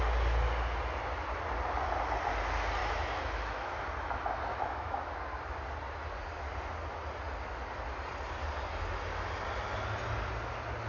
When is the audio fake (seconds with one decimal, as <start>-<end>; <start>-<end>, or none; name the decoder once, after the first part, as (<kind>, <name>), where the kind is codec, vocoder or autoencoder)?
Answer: 2.8-3.8 (autoencoder, DAC-VAE); 4.5-5.1